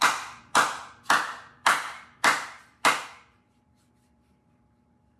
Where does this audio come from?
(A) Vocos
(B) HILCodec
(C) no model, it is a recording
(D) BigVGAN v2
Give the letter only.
D